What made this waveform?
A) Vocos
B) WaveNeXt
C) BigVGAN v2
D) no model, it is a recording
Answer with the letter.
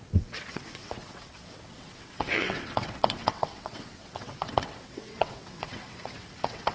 B